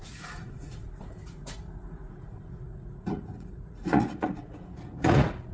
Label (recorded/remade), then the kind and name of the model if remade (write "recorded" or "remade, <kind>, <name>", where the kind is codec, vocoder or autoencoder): remade, vocoder, Vocos